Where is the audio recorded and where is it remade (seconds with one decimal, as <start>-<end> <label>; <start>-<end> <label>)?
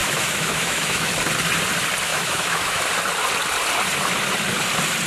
0.0-1.1 remade; 1.1-2.1 recorded; 2.1-2.8 remade; 2.8-5.1 recorded